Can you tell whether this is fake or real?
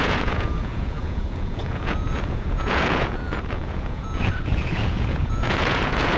fake